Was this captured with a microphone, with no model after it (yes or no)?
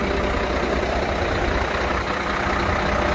yes